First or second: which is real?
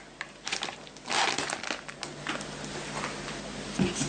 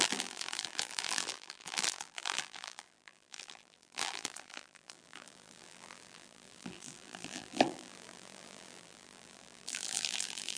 first